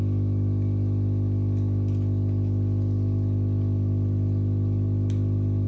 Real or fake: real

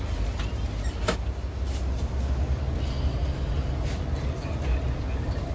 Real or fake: real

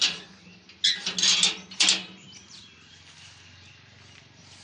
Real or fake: real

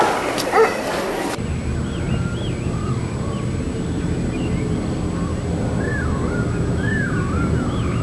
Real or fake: real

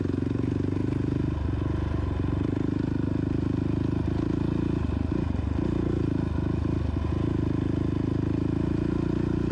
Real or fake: real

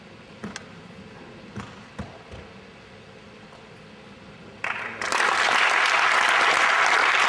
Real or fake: real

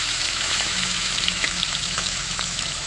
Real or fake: fake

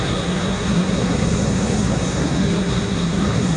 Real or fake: fake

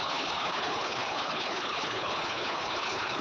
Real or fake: fake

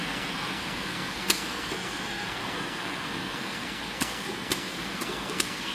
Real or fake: fake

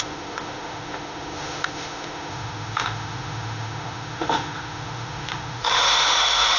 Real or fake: fake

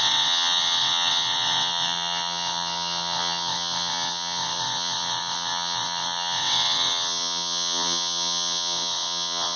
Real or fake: fake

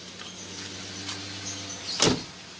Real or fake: real